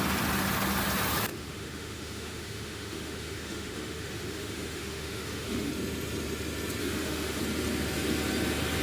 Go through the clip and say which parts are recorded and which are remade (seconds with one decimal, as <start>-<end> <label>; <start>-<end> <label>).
0.0-1.3 recorded; 1.3-5.7 remade; 5.7-6.8 recorded; 6.8-7.4 remade; 7.4-8.8 recorded